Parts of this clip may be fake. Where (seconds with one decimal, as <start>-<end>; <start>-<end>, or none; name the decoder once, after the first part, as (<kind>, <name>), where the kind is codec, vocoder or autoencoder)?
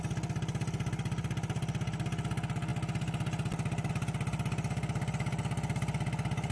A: none